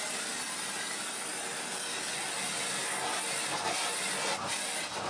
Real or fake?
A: real